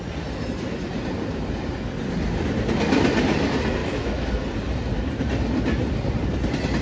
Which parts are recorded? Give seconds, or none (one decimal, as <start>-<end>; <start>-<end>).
0.0-3.8; 4.3-6.8